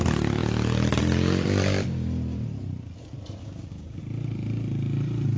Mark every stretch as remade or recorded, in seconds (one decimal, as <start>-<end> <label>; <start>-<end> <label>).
0.0-3.4 recorded; 3.4-4.0 remade; 4.0-5.4 recorded